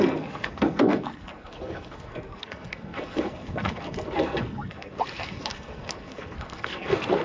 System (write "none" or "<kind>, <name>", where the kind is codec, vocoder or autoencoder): codec, SNAC